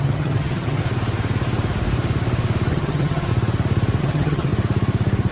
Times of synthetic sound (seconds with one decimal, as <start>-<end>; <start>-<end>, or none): 0.0-0.8; 2.7-3.3; 4.0-4.5